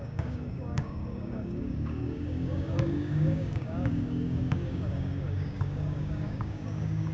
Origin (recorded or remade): remade